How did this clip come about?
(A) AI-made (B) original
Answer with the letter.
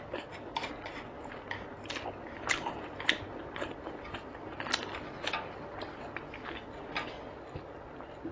B